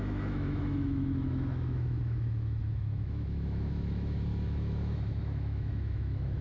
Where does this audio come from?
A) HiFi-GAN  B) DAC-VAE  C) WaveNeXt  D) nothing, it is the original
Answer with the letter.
B